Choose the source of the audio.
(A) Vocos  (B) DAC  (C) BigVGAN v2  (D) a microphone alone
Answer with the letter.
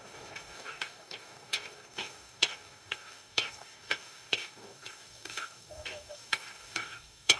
B